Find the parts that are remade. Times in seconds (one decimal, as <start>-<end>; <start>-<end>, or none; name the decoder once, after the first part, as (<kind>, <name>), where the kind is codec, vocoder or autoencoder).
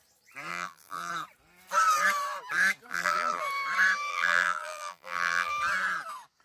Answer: 0.5-1.1 (vocoder, BigVGAN v2); 2.9-3.4; 4.1-5.5